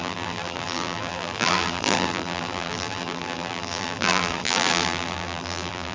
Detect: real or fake fake